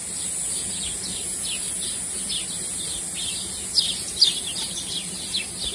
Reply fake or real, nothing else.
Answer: real